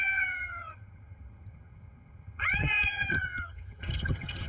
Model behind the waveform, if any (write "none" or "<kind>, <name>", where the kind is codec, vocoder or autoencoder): vocoder, HiFi-GAN